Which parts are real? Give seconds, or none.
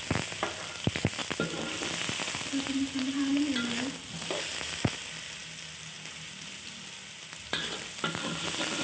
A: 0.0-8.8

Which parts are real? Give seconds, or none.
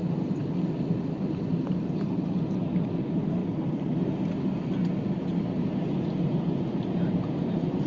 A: 0.0-7.9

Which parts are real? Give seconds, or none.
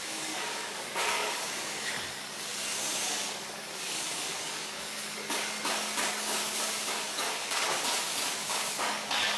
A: none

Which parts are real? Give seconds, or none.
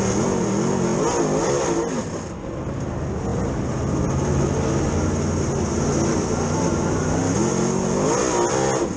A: 0.0-9.0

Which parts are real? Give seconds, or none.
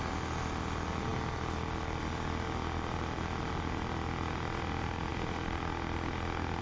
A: 0.0-6.6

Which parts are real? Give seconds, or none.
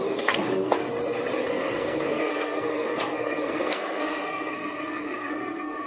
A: 0.8-1.5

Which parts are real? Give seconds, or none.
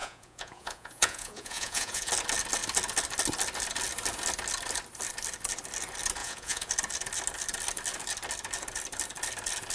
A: 2.1-6.2; 6.7-9.7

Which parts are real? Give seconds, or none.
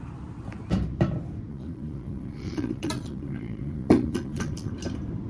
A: 0.0-1.5; 4.7-5.3